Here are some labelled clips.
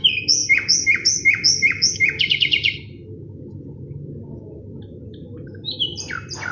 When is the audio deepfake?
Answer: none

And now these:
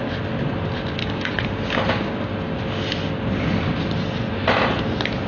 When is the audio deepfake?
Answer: 1.0-2.3 (codec, DAC)

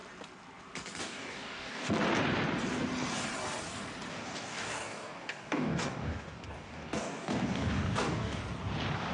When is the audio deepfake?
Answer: 1.0-1.9 (codec, DAC); 4.1-8.4

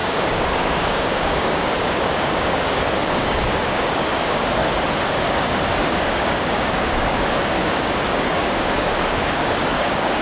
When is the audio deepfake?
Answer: 0.0-4.6 (codec, DAC); 5.1-10.2